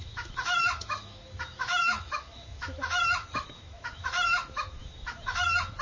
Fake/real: fake